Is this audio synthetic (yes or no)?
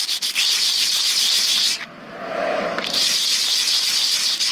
no